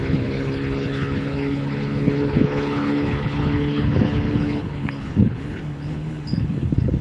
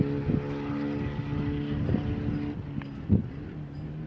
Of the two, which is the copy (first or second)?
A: first